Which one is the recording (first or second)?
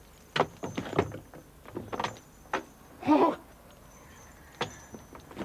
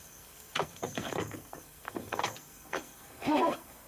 first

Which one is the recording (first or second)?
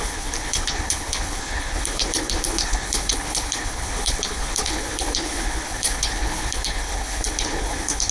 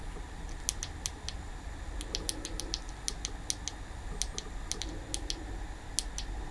second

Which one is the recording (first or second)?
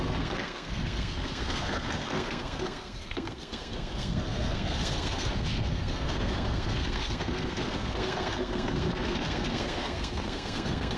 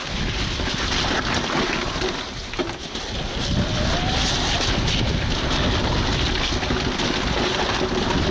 second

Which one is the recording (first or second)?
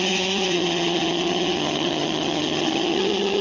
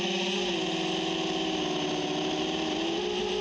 second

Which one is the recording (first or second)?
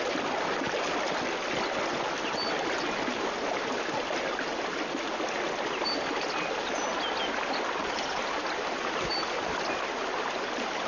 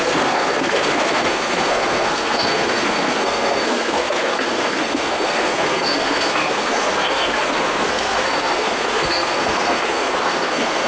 first